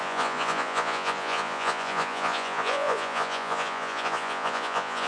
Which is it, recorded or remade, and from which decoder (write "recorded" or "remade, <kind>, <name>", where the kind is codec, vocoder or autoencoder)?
remade, vocoder, Vocos